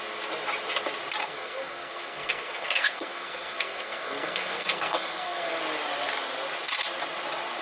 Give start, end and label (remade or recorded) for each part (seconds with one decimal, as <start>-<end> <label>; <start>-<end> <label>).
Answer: 0.0-1.2 recorded; 1.2-5.6 remade; 5.6-7.6 recorded